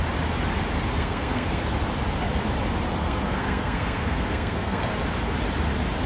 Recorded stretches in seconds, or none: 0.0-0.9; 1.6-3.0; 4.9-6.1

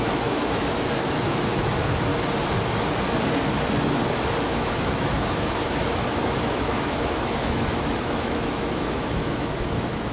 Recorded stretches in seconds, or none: 2.1-4.4

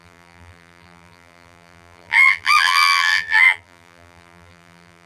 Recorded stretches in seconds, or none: none

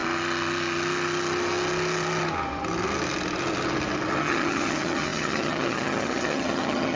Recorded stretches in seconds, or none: 0.0-4.2